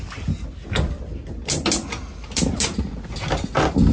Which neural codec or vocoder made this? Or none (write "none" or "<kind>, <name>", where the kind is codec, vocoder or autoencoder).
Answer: none